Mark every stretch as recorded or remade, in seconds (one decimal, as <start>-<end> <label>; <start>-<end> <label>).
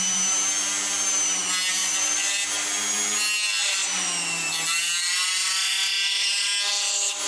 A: 0.0-1.8 recorded; 1.8-2.3 remade; 2.3-7.3 recorded